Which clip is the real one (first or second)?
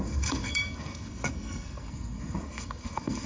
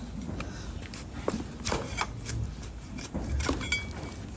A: second